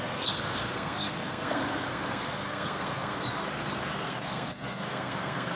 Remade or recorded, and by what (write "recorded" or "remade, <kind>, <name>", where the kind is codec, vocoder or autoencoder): remade, codec, SNAC